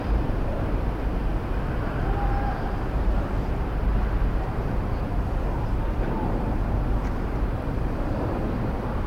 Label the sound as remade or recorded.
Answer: remade